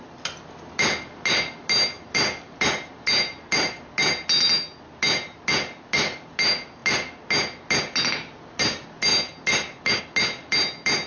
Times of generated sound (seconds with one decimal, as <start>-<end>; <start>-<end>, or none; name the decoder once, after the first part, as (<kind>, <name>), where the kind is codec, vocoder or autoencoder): none